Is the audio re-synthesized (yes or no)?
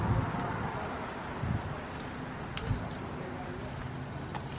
no